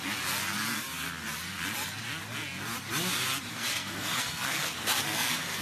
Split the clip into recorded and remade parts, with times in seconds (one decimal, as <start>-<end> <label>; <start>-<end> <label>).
0.0-3.5 recorded; 3.5-5.6 remade